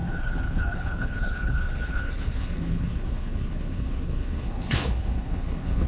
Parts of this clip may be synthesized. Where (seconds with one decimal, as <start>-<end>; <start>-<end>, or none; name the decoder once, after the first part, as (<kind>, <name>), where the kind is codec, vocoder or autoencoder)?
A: 0.0-5.9 (codec, HILCodec)